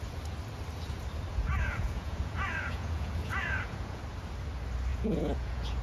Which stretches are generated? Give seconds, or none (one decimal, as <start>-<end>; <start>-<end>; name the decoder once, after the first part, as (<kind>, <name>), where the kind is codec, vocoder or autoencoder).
1.3-4.0 (vocoder, Vocos); 4.9-5.8